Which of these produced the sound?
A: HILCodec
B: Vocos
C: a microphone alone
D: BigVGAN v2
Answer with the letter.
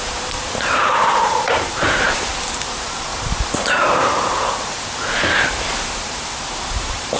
D